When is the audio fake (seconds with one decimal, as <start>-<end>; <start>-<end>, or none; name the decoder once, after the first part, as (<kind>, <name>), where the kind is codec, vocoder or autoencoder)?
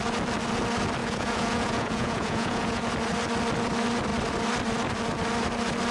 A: 1.0-2.8 (vocoder, Vocos)